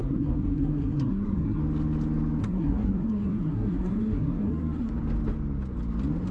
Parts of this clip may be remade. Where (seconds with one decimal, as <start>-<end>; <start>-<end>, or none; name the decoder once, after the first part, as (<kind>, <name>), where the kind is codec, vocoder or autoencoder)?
0.0-1.6 (codec, SNAC); 2.4-4.9